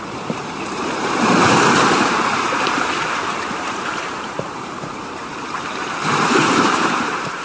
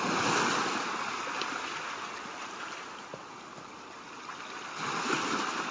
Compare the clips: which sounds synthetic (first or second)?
first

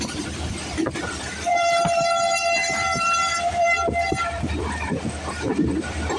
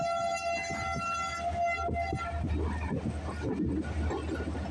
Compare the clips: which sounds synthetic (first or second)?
first